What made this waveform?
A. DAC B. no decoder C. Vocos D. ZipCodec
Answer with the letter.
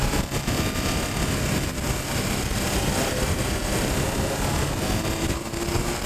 B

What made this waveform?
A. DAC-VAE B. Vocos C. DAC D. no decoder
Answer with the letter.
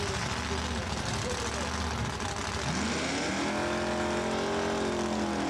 D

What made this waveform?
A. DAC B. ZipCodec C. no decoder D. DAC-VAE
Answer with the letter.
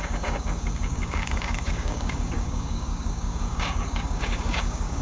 A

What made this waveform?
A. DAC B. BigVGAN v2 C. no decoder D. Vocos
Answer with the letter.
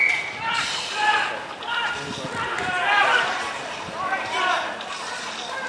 C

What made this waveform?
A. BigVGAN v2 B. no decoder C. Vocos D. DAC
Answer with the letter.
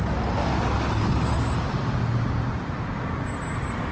B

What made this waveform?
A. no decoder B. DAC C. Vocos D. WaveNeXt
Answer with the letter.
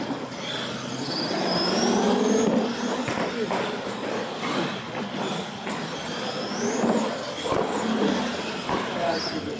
A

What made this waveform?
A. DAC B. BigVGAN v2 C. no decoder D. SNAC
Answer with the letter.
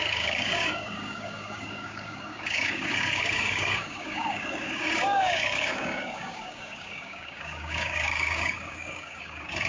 A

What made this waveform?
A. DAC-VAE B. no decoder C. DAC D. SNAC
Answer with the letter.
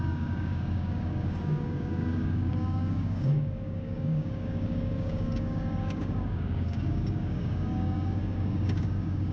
C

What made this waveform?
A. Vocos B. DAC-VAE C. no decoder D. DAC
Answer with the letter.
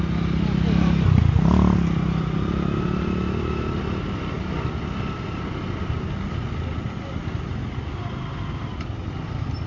C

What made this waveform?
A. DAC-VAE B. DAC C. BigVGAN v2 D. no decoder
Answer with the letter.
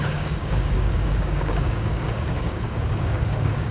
B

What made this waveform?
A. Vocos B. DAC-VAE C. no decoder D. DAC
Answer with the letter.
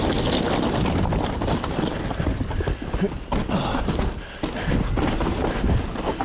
C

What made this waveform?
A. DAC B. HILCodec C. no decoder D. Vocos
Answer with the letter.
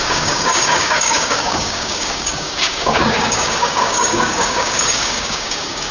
A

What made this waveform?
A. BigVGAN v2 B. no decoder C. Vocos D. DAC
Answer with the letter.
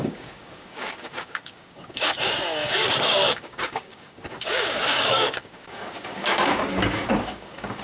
D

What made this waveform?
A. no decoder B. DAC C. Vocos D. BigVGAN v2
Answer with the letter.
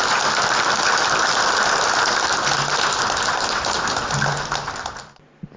A